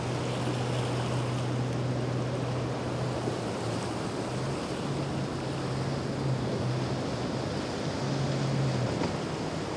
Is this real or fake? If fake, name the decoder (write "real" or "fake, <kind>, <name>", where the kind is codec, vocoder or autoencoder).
real